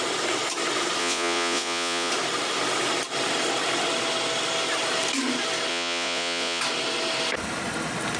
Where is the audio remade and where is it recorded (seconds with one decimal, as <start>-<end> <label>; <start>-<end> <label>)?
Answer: 0.0-1.0 recorded; 1.0-2.1 remade; 2.1-5.7 recorded; 5.7-6.6 remade; 6.6-8.2 recorded